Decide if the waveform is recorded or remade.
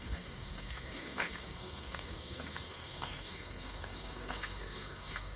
remade